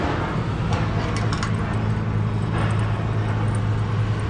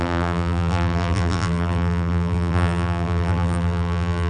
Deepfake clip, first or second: second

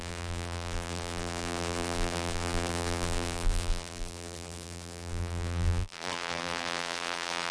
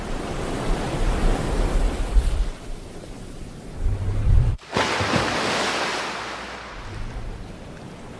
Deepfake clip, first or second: first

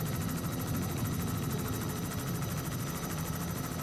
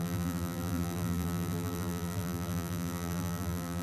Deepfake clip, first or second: second